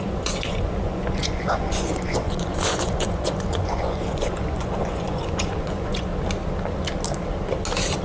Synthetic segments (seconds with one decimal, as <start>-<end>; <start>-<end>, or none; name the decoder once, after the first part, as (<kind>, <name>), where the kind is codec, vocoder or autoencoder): 0.0-6.1 (vocoder, Vocos)